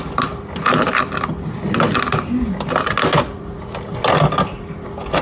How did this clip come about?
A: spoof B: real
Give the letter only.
B